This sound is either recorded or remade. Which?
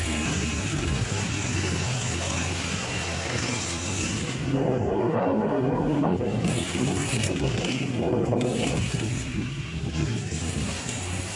remade